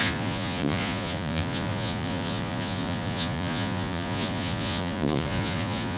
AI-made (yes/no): yes